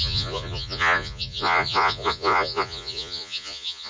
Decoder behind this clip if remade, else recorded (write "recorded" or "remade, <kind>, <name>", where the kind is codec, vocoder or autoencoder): remade, vocoder, Vocos